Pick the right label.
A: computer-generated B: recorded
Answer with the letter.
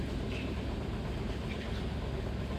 B